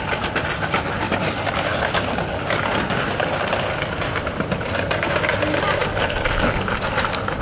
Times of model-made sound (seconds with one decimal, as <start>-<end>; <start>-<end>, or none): none